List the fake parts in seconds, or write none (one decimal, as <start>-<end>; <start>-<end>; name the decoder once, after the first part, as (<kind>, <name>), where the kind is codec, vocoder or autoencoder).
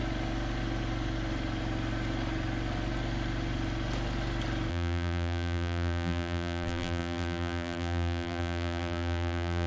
4.7-9.7 (vocoder, BigVGAN v2)